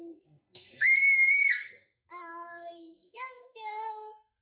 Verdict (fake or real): fake